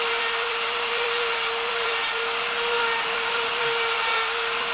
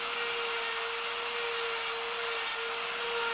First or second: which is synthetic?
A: first